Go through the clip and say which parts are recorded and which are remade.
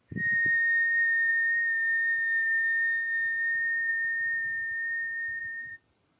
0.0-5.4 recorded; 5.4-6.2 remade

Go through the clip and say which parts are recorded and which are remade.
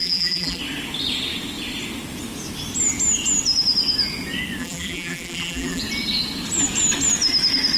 0.0-0.6 remade; 0.6-4.6 recorded; 4.6-5.8 remade; 5.8-7.8 recorded